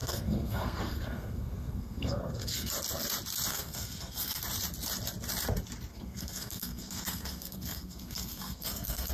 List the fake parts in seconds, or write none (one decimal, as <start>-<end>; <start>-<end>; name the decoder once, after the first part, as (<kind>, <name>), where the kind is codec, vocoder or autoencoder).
0.0-2.7 (codec, SNAC); 3.5-4.4; 5.9-9.1